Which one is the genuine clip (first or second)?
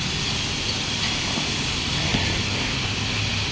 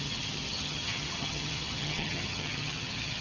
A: first